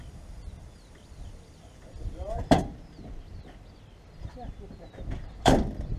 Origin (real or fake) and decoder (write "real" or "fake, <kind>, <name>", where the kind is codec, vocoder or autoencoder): fake, vocoder, BigVGAN v2